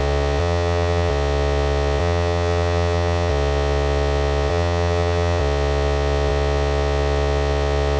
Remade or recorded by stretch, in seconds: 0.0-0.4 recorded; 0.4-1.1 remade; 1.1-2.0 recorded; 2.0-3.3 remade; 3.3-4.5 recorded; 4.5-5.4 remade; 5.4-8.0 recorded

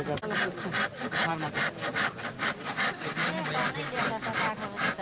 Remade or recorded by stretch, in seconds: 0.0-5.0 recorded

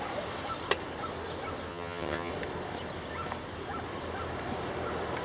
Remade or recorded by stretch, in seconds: 0.0-1.7 recorded; 1.7-2.3 remade; 2.3-5.2 recorded

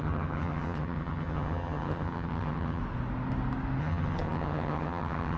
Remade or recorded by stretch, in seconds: 0.0-2.8 remade; 2.8-3.8 recorded; 3.8-5.4 remade

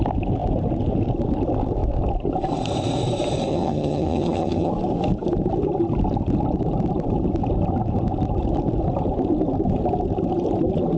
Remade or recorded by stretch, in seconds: 0.0-3.5 recorded; 3.5-4.7 remade; 4.7-11.0 recorded

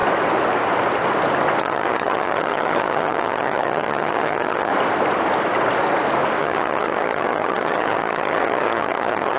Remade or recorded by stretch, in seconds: 0.0-1.6 recorded; 1.6-4.7 remade; 4.7-6.4 recorded; 6.4-9.4 remade

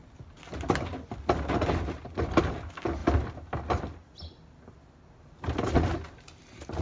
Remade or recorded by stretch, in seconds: 0.0-6.8 recorded